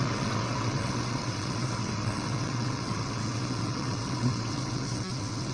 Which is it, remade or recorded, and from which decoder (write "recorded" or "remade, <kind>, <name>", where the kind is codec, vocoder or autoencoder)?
remade, vocoder, WaveNeXt